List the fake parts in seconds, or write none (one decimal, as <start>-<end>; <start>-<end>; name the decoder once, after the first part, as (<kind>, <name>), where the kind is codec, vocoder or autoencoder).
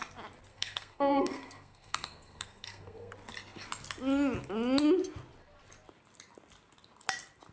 0.5-3.1 (codec, SNAC)